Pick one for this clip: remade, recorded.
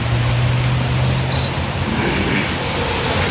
recorded